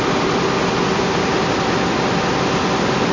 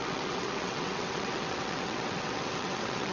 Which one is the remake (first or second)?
second